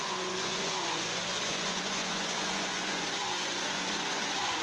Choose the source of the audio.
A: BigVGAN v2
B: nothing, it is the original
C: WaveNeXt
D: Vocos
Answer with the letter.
D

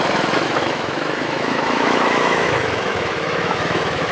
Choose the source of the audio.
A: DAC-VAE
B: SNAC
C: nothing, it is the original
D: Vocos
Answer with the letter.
A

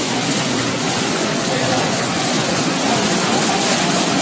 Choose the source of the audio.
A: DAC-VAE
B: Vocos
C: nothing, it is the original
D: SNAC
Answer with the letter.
B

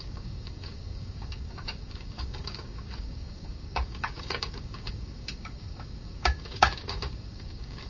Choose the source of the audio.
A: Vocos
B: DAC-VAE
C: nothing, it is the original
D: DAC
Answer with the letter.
D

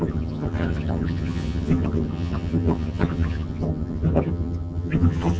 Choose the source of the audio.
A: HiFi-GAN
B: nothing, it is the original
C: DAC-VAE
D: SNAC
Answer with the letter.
A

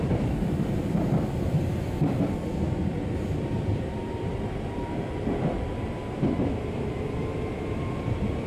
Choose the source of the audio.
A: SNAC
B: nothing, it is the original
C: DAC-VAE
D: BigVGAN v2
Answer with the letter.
D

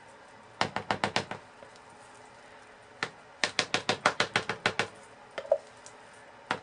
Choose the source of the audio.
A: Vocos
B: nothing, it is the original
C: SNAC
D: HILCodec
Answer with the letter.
B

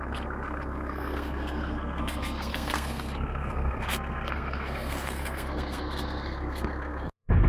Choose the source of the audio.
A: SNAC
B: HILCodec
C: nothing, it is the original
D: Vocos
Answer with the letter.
A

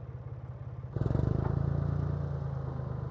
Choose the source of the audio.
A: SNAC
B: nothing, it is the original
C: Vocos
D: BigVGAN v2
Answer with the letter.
B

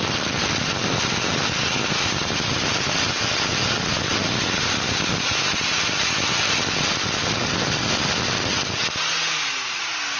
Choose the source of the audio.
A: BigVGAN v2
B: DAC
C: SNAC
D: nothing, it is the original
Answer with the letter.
D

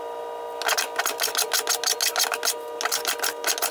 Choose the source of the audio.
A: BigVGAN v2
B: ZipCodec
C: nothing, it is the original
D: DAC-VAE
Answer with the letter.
C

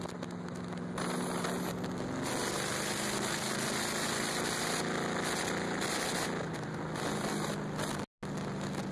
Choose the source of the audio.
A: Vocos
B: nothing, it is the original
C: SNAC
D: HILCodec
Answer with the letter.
B